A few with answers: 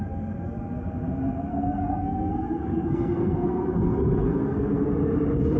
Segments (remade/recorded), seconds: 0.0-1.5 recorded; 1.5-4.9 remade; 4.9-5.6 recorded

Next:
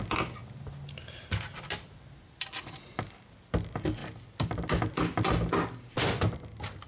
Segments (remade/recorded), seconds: 0.0-6.9 recorded

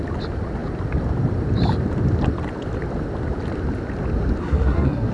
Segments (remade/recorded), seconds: 0.0-4.4 recorded; 4.4-5.1 remade

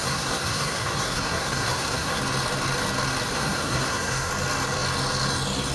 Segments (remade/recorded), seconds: 0.0-2.2 remade; 2.2-3.3 recorded; 3.3-4.3 remade; 4.3-5.7 recorded

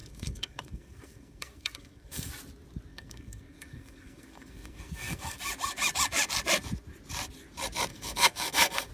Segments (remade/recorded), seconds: 0.0-2.3 remade; 2.3-2.9 recorded; 2.9-5.4 remade; 5.4-7.9 recorded; 7.9-8.9 remade

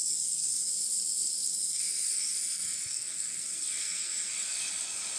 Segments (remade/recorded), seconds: 0.0-0.7 remade; 0.7-1.5 recorded; 1.5-4.6 remade; 4.6-5.2 recorded